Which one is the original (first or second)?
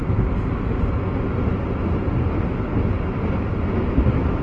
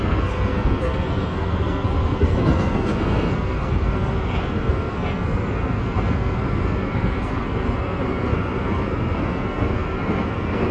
first